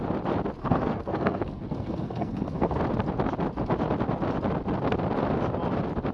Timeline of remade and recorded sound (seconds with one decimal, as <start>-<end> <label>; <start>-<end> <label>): 0.0-0.6 recorded; 0.6-2.8 remade; 2.8-6.1 recorded